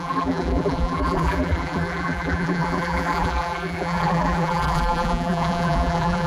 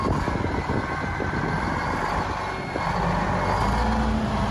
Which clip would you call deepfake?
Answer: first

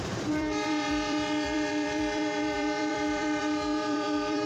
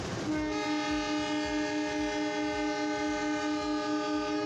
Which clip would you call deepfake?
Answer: first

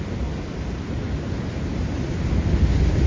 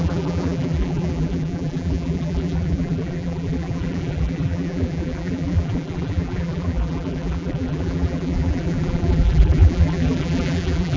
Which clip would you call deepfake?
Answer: second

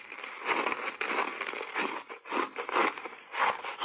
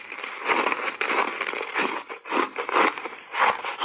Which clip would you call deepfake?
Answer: second